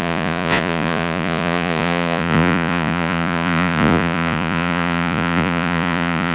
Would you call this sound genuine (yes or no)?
no